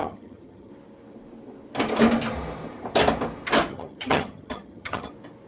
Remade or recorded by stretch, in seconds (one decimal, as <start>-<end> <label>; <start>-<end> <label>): 0.0-0.7 remade; 0.7-3.7 recorded; 3.7-5.1 remade; 5.1-5.5 recorded